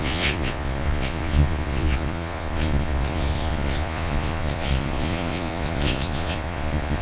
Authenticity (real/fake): fake